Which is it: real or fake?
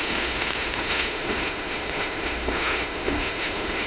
fake